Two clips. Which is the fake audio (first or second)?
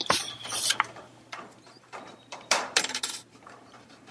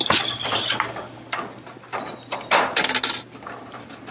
first